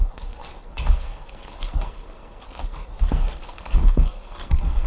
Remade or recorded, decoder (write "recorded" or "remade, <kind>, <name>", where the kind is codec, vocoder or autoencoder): remade, codec, SNAC